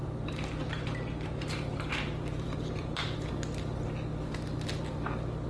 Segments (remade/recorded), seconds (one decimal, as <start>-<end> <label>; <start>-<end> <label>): 0.0-3.3 remade; 3.3-5.5 recorded